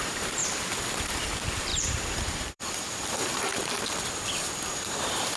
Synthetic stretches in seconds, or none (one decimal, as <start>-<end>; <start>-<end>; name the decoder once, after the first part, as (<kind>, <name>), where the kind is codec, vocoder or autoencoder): 0.0-0.4 (vocoder, BigVGAN v2); 1.0-3.6; 4.7-5.4